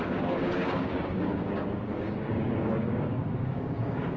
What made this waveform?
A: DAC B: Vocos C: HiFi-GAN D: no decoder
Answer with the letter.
A